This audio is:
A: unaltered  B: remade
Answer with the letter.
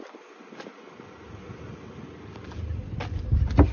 A